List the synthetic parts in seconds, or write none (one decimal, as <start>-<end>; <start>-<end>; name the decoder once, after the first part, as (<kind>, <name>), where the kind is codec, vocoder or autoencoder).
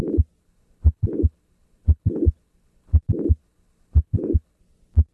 0.4-3.0 (codec, HILCodec); 3.4-4.6